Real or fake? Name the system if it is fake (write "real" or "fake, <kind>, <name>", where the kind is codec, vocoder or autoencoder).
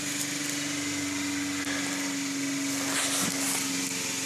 real